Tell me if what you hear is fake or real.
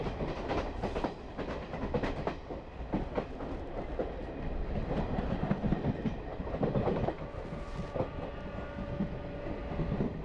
real